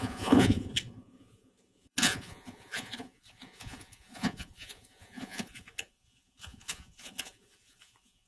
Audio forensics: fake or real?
fake